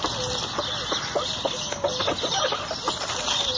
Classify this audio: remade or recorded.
recorded